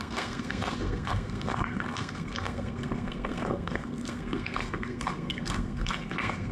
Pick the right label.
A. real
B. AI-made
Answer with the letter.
B